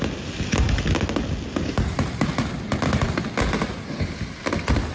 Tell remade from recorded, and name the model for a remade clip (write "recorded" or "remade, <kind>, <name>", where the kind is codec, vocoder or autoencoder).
recorded